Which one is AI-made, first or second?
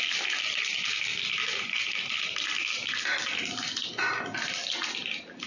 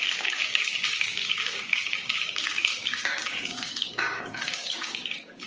second